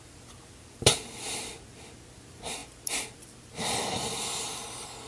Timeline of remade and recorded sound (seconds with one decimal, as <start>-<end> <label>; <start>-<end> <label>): 0.0-5.1 recorded